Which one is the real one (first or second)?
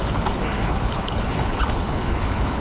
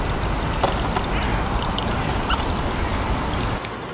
second